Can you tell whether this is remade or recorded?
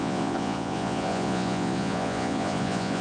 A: remade